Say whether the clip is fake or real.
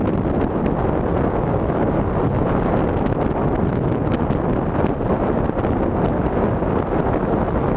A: real